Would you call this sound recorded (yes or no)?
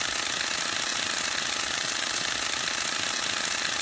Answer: yes